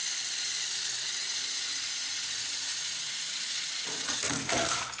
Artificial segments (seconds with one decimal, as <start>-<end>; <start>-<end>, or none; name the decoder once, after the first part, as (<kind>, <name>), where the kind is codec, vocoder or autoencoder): 1.2-4.2 (vocoder, Vocos)